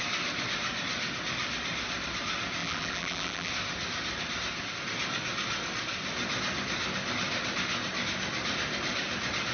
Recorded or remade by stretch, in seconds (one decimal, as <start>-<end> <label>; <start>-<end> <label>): 0.0-2.6 recorded; 2.6-3.5 remade; 3.5-9.5 recorded

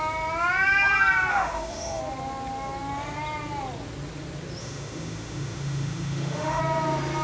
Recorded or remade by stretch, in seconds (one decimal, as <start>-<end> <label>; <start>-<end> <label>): 0.0-1.3 recorded; 1.3-2.0 remade; 2.0-4.6 recorded; 4.6-6.6 remade; 6.6-7.2 recorded

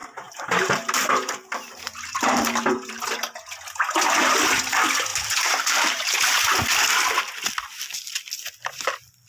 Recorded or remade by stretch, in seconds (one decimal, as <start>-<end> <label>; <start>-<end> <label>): 0.0-3.0 remade; 3.0-5.1 recorded; 5.1-6.4 remade; 6.4-9.3 recorded

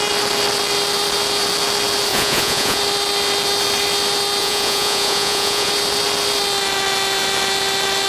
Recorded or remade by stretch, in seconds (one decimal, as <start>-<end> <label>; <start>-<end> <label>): 0.0-2.1 recorded; 2.1-2.8 remade; 2.8-4.4 recorded; 4.4-5.7 remade; 5.7-8.1 recorded

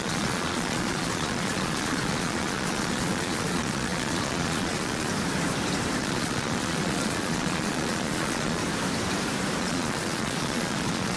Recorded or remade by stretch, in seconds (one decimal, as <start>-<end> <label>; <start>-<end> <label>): 0.0-5.1 remade; 5.1-6.0 recorded; 6.0-8.6 remade; 8.6-9.6 recorded; 9.6-11.2 remade

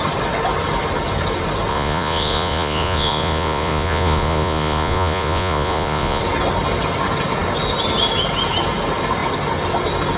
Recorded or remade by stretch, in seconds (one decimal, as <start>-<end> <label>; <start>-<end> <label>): 0.0-1.7 recorded; 1.7-6.2 remade; 6.2-10.2 recorded

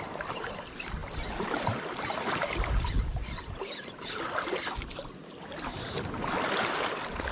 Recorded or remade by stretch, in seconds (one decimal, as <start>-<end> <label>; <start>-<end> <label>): 0.0-7.3 recorded